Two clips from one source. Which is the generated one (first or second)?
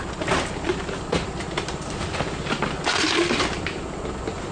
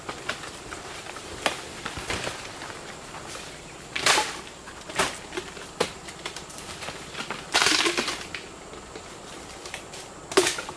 second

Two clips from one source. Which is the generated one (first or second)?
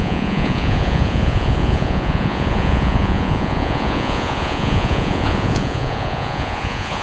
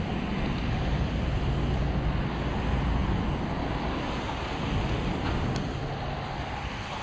first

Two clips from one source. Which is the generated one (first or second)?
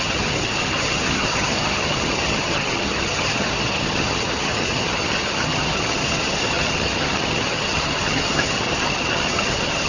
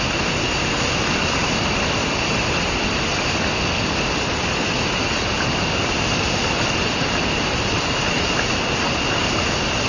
first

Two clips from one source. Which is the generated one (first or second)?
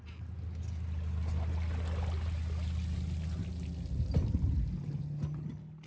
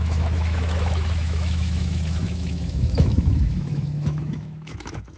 second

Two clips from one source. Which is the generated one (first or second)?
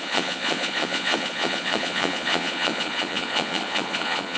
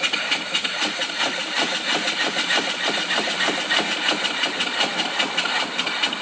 first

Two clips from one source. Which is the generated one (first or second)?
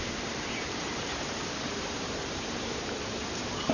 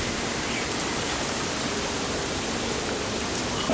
first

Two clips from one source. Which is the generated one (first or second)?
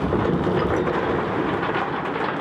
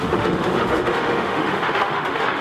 second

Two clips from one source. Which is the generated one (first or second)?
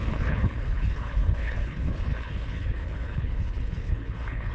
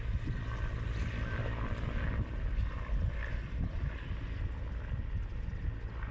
first